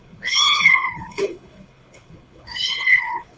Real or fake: fake